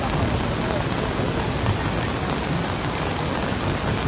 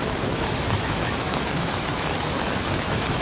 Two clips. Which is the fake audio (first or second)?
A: second